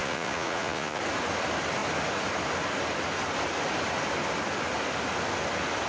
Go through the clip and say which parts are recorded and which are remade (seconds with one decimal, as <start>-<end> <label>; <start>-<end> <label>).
0.0-1.0 remade; 1.0-5.9 recorded

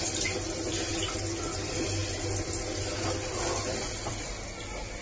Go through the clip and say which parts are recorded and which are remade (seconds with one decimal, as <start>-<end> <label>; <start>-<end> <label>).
0.0-5.0 recorded

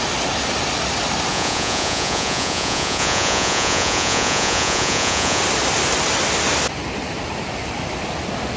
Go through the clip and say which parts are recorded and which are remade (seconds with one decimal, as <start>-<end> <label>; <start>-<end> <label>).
0.0-1.3 recorded; 1.3-5.4 remade; 5.4-8.6 recorded

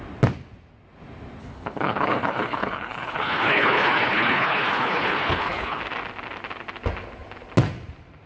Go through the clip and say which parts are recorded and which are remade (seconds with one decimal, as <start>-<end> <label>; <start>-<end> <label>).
0.0-1.4 recorded; 1.4-5.8 remade; 5.8-8.3 recorded

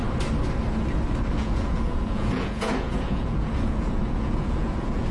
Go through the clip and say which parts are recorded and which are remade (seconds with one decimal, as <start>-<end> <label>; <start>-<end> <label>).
0.0-1.3 recorded; 1.3-5.1 remade

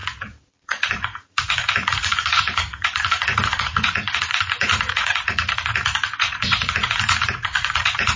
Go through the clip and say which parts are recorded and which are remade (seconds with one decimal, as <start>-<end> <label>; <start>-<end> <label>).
0.0-8.2 remade

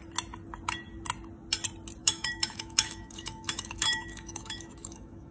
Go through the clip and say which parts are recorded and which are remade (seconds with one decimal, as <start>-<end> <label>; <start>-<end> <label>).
0.0-2.0 recorded; 2.0-5.3 remade